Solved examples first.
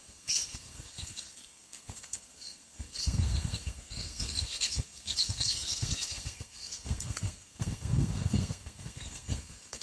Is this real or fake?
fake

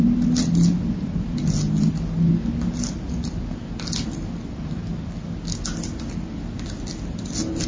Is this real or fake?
real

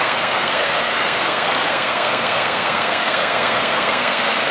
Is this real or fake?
fake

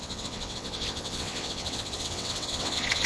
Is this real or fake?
fake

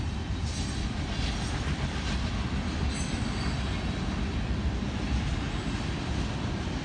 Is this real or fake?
real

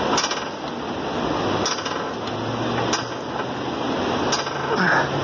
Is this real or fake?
real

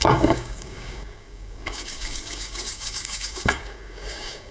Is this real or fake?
fake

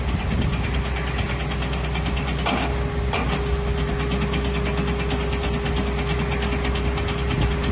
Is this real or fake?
real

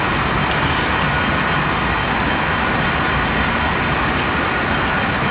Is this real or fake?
real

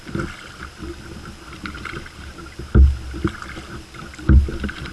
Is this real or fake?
real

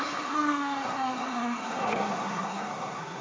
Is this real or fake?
fake